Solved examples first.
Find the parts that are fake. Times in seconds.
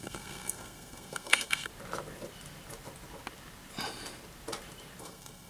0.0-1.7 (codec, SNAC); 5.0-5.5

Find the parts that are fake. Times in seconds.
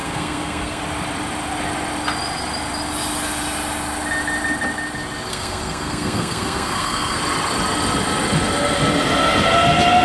0.0-0.8 (codec, SNAC); 5.3-7.2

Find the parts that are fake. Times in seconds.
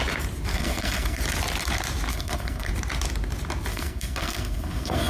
0.5-1.2 (codec, SNAC); 2.1-2.7; 3.7-5.1